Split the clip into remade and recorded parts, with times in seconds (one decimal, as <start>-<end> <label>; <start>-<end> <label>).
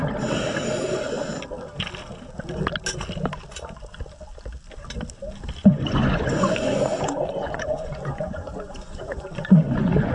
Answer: 0.0-5.6 recorded; 5.6-10.1 remade